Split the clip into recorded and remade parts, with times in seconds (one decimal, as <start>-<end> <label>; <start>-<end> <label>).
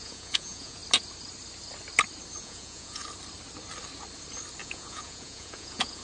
0.0-0.8 remade; 0.8-2.4 recorded; 2.4-3.0 remade; 3.0-4.6 recorded; 4.6-6.0 remade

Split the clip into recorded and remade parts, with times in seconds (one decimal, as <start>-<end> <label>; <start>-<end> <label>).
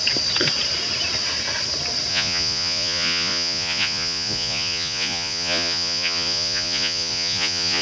0.0-2.1 recorded; 2.1-7.8 remade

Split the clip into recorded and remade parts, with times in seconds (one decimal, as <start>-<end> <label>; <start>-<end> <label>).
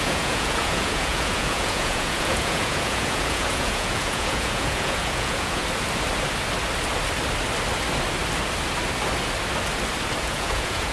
0.0-5.6 remade; 5.6-10.2 recorded; 10.2-10.9 remade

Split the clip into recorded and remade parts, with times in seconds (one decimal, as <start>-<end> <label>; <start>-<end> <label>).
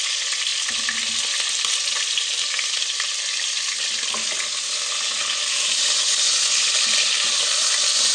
0.0-8.1 recorded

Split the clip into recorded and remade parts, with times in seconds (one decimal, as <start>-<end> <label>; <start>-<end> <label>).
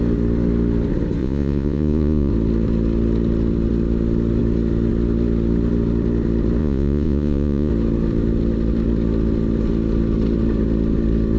0.0-1.2 recorded; 1.2-2.3 remade; 2.3-6.6 recorded; 6.6-7.7 remade; 7.7-11.4 recorded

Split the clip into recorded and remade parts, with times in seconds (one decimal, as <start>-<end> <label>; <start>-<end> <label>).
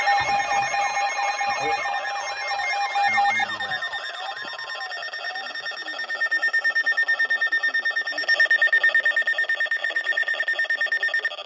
0.0-9.8 recorded; 9.8-10.4 remade; 10.4-11.5 recorded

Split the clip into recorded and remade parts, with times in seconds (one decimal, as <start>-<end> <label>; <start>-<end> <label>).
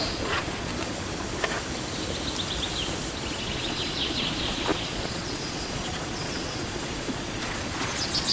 0.0-0.7 remade; 0.7-3.3 recorded; 3.3-8.3 remade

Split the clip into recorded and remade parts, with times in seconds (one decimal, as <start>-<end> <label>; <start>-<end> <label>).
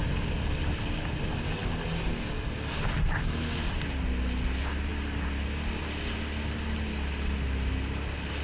0.0-8.4 recorded